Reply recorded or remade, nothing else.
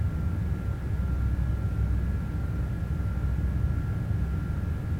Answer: recorded